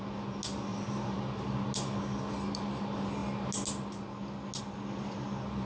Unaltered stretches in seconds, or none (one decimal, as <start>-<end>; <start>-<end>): 0.0-0.7; 1.2-5.7